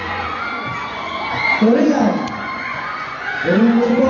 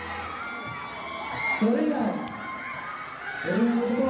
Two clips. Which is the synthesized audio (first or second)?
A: first